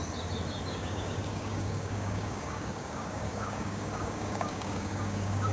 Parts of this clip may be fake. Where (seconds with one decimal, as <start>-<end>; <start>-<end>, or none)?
0.7-5.5